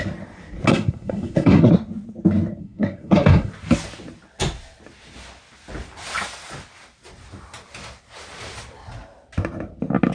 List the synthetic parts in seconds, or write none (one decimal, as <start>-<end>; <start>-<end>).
0.7-1.7; 2.6-3.5